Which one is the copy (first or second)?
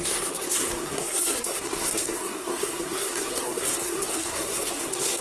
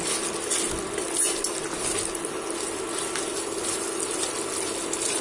first